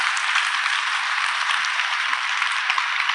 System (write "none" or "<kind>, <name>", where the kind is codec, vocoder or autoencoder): vocoder, BigVGAN v2